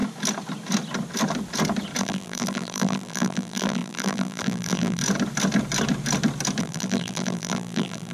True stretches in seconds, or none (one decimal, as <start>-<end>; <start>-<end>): 0.0-2.0; 5.0-6.6